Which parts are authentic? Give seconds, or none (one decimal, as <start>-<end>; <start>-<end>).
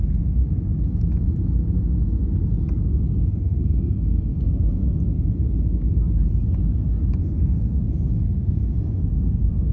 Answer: 0.4-3.4; 4.8-7.2